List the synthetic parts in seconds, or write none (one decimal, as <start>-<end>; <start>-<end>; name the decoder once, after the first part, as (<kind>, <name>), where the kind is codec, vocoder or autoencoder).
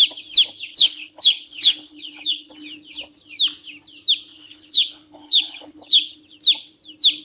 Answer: 0.7-2.5 (codec, HILCodec); 4.3-6.2